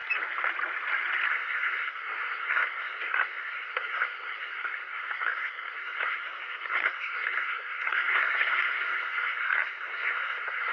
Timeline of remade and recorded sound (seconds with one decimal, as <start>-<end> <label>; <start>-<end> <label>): 0.0-1.3 recorded; 1.3-10.7 remade